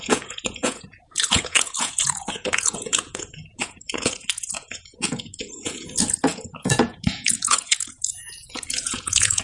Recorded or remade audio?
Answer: remade